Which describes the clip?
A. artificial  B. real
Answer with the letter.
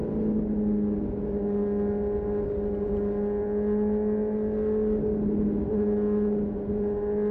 B